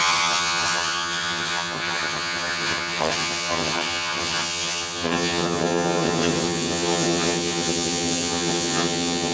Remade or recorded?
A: remade